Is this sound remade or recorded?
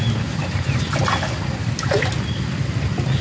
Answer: recorded